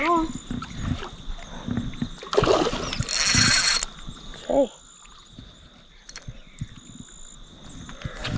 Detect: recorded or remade recorded